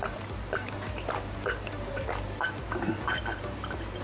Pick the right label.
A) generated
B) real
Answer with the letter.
B